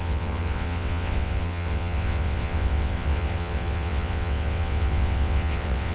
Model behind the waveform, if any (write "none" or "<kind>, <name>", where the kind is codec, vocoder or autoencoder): vocoder, WaveNeXt